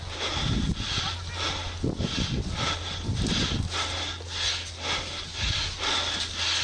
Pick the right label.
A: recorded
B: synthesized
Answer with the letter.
A